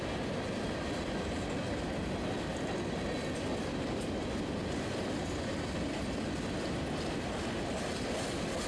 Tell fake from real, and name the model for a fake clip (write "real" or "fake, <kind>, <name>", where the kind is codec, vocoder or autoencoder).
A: real